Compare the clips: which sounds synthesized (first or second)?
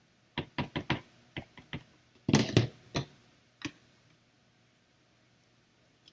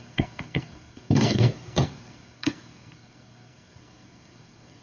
second